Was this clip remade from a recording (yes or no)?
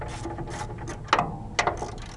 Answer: no